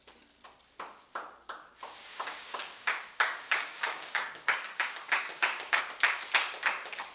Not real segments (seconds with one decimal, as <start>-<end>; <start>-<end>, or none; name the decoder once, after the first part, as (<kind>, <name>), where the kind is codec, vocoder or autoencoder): 2.1-5.8 (codec, DAC)